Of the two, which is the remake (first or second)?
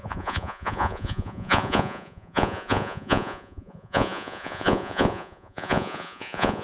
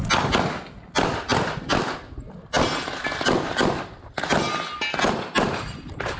first